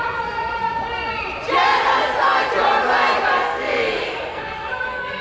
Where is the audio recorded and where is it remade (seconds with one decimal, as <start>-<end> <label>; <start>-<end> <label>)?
0.0-3.4 recorded; 3.4-5.2 remade